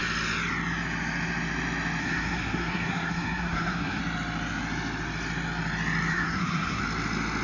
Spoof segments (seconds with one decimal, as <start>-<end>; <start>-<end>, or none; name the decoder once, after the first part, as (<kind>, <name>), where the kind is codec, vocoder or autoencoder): 2.0-4.0 (codec, SNAC); 6.1-6.8